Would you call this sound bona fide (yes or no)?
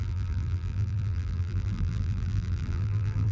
no